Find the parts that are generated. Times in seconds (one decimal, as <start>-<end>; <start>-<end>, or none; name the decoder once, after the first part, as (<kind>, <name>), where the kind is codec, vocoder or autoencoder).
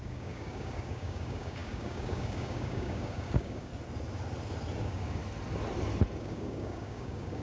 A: 0.0-3.7 (codec, DAC); 4.8-5.2; 6.2-7.4